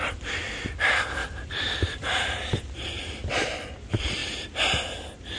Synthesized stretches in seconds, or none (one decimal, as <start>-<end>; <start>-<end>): 1.2-3.3

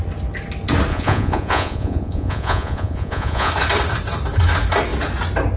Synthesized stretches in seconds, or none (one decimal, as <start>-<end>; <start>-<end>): 0.9-3.5

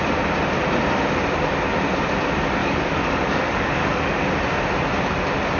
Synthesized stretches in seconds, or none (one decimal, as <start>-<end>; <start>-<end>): 2.6-4.3

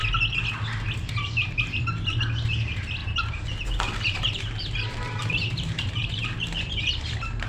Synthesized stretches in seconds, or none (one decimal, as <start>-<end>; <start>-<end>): 3.0-7.0

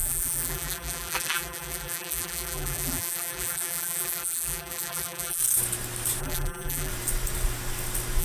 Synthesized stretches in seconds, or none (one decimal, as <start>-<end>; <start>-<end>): 0.0-5.4; 6.2-6.9

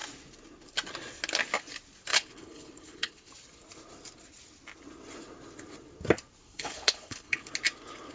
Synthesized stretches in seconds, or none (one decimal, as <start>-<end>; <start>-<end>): 2.1-3.3; 6.4-7.5

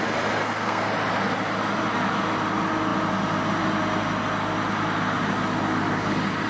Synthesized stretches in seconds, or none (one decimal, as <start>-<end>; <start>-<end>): 0.4-0.9

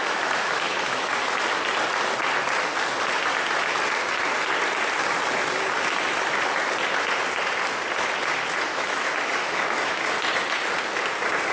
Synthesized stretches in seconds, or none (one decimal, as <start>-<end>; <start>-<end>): 0.0-1.2; 8.7-10.0